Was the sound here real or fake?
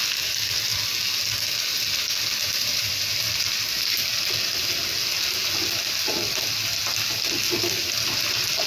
real